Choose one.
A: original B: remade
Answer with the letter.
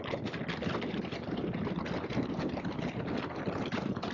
A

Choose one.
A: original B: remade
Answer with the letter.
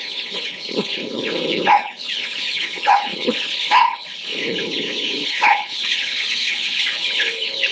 B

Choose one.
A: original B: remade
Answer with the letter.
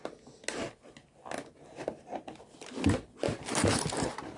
A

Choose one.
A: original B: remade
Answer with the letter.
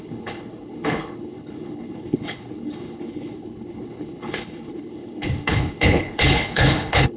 B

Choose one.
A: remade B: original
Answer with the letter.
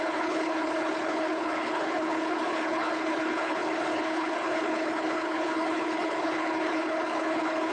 A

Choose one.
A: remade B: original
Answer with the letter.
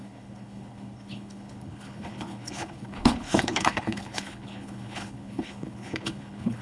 A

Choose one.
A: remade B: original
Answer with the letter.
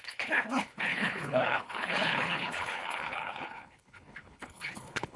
A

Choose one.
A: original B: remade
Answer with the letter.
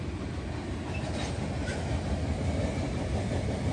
A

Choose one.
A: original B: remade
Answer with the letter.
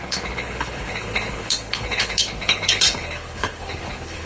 B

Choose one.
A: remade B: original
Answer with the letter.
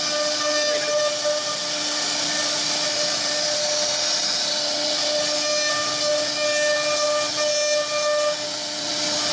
B